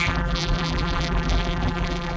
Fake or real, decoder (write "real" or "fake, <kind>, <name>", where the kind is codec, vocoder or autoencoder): fake, vocoder, BigVGAN v2